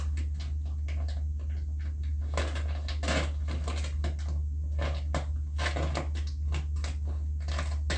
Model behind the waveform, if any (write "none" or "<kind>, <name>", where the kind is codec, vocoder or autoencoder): none